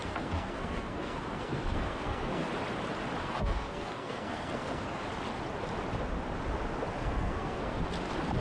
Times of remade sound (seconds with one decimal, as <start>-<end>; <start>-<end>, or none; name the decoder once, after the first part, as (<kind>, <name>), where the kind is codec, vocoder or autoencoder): 0.0-2.5 (codec, SNAC); 3.2-5.0; 7.0-7.8